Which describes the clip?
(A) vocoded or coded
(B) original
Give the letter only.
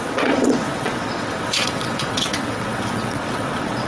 A